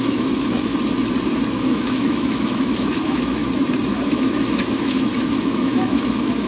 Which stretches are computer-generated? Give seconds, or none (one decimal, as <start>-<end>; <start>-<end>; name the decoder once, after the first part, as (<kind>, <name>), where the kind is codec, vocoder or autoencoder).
0.0-0.7 (autoencoder, DAC-VAE); 1.5-3.4; 3.9-6.5